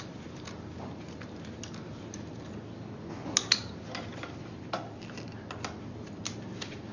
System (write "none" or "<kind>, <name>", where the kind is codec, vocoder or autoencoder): none